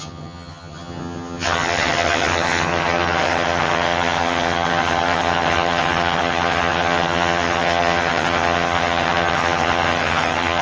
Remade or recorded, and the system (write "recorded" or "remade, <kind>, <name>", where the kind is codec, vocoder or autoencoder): remade, vocoder, HiFi-GAN